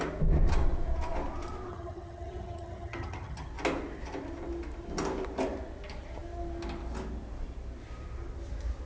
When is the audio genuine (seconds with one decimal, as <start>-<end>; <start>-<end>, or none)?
0.0-1.7; 3.5-8.9